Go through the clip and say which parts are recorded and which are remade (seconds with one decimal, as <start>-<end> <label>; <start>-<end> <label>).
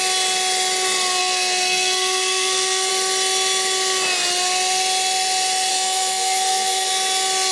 0.0-1.2 recorded; 1.2-2.9 remade; 2.9-5.7 recorded; 5.7-6.9 remade; 6.9-7.5 recorded